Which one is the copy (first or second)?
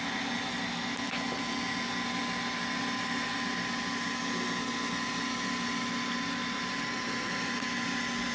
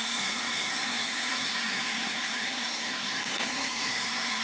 second